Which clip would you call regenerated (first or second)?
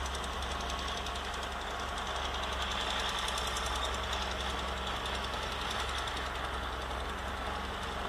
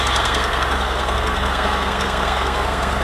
second